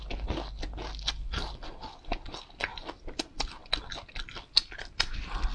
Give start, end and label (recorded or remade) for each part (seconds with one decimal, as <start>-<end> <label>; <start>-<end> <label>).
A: 0.0-5.5 recorded